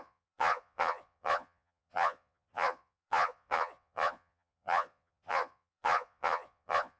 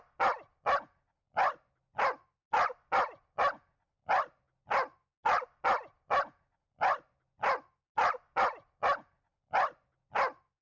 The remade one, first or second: first